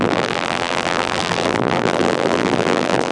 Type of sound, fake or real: fake